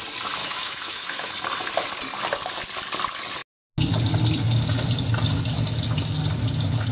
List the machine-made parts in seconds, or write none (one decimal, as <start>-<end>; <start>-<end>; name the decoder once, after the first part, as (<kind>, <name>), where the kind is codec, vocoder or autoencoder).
0.4-1.3 (autoencoder, DAC-VAE)